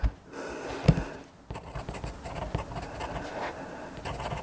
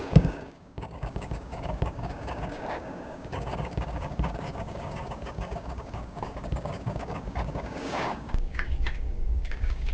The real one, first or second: first